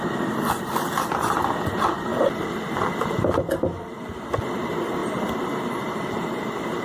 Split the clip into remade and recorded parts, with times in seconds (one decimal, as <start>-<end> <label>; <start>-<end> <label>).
0.0-5.0 recorded; 5.0-6.1 remade; 6.1-6.8 recorded